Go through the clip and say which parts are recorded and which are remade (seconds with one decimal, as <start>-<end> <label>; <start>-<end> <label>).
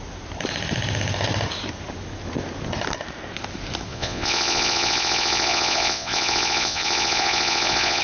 0.0-3.9 recorded; 3.9-8.0 remade